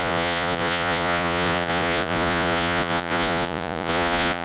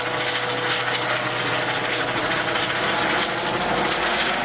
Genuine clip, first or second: second